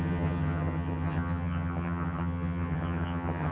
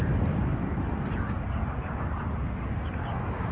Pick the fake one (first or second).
first